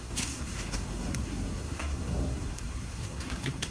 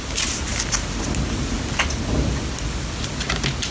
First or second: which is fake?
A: first